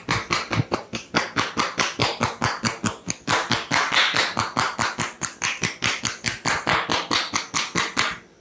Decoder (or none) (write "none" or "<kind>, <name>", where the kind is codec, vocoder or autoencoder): none